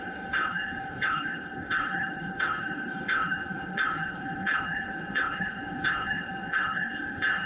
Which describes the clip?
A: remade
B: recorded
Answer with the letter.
A